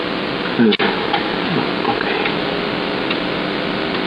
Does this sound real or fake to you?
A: real